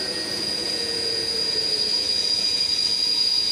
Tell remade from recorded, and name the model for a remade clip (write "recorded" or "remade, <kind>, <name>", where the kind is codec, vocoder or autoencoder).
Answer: remade, vocoder, Vocos